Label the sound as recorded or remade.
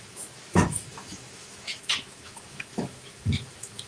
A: remade